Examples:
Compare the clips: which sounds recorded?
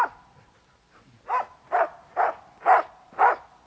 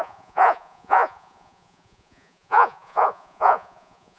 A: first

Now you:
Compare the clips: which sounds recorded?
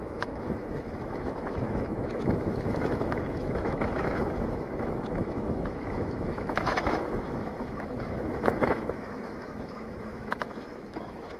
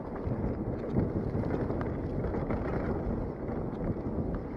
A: second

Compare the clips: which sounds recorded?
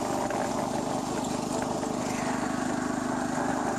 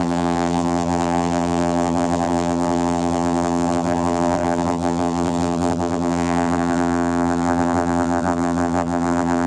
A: first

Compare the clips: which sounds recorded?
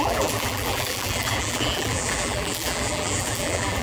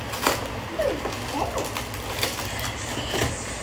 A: second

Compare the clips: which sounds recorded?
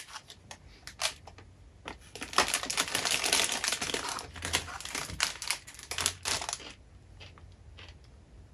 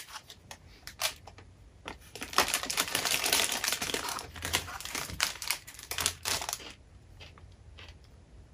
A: first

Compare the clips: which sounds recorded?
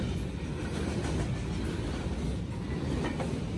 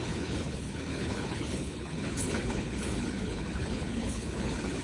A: first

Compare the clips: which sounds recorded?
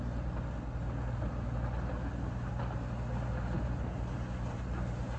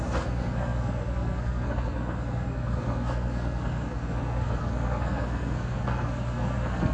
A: first